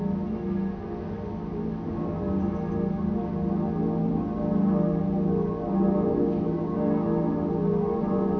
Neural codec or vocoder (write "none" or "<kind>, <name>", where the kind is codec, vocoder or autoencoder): none